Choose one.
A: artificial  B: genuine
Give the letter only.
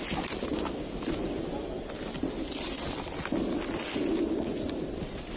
B